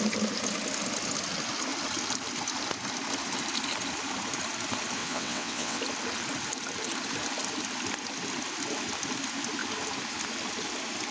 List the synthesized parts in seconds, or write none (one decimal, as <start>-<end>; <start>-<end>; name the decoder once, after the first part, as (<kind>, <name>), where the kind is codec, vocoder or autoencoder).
5.0-5.8 (vocoder, WaveNeXt)